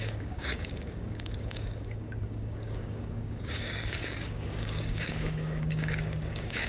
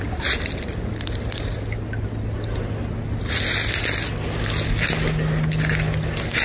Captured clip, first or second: second